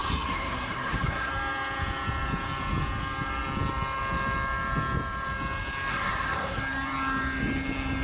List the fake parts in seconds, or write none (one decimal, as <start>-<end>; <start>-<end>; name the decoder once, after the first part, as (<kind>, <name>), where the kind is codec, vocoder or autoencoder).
0.0-1.3 (codec, SNAC); 5.9-6.6